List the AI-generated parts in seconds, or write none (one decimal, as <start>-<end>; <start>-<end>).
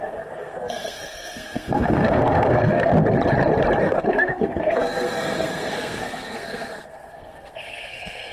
0.0-2.9; 3.8-8.3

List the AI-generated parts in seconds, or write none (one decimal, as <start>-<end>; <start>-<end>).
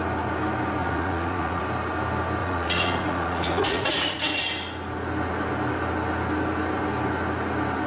0.8-1.6; 2.4-4.4